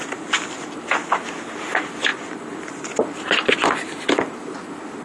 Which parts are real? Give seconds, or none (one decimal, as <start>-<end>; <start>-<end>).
0.0-5.0

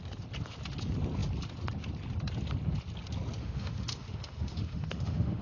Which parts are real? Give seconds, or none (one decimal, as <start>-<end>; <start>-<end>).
0.0-3.4

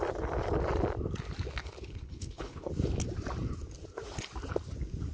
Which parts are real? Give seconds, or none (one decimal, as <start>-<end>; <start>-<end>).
0.0-1.6; 2.7-5.1

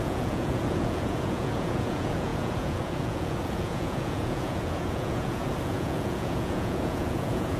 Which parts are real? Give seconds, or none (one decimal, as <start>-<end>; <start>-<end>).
none

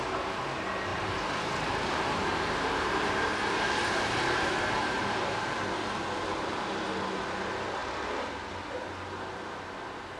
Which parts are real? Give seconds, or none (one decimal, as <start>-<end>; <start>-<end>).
0.0-0.9; 4.6-10.2

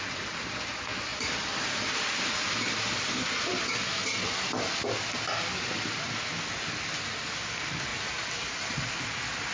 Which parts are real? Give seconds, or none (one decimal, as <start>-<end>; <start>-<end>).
0.0-9.5

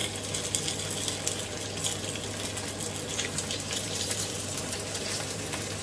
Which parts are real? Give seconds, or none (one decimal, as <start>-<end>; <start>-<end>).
0.0-3.1